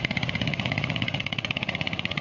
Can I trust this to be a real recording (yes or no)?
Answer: no